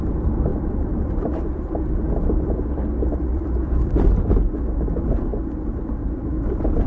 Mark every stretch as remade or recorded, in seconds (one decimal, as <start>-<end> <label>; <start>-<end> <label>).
0.0-0.5 recorded; 0.5-4.2 remade; 4.2-6.9 recorded